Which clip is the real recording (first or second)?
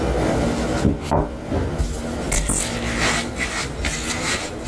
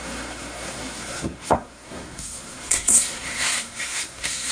first